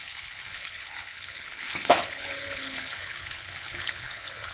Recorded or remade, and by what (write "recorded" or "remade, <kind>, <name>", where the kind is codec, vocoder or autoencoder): remade, codec, HILCodec